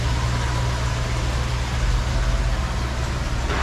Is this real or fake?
real